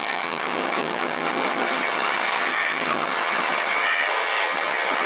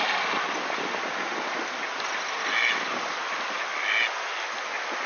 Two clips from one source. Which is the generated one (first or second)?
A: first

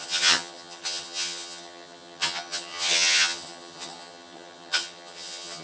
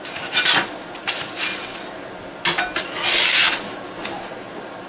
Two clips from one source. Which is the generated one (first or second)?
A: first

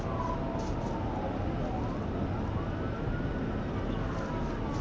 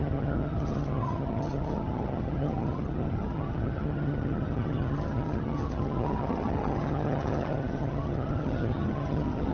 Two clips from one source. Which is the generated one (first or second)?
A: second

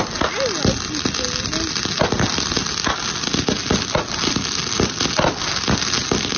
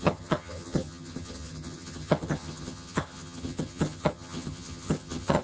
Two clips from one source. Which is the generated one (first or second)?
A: second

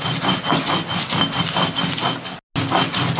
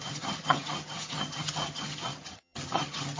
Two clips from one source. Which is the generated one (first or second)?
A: second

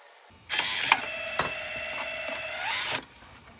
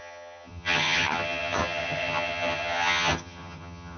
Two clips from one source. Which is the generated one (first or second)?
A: second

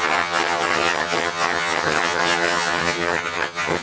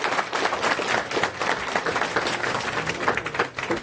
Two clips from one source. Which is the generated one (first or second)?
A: first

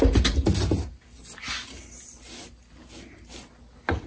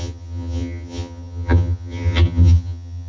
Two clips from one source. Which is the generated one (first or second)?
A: second